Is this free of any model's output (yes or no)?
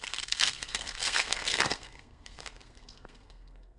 no